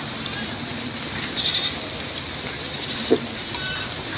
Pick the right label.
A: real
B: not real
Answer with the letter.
A